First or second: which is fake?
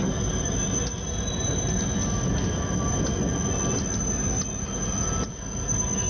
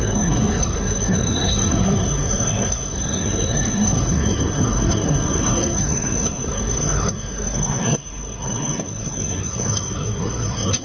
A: second